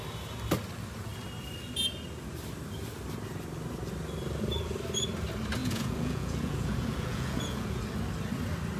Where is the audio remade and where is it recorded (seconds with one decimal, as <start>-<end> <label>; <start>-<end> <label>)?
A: 0.0-5.6 recorded; 5.6-7.8 remade; 7.8-8.8 recorded